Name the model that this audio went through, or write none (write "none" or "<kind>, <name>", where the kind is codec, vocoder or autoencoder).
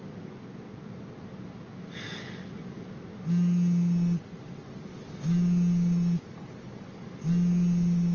none